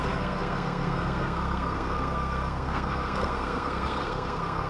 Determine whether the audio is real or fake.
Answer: fake